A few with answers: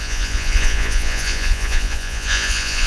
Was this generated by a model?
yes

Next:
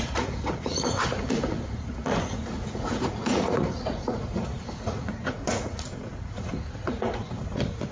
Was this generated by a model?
yes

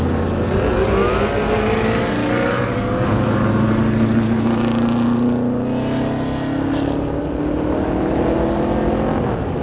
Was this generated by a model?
no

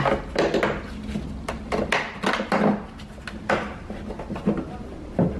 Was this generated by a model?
no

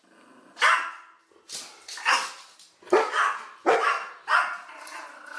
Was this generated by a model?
no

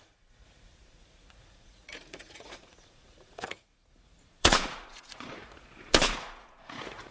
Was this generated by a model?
yes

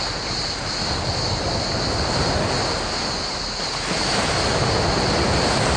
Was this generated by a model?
no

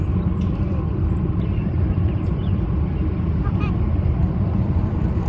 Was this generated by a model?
no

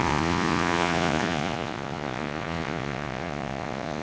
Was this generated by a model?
yes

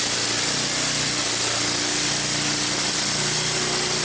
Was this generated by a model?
no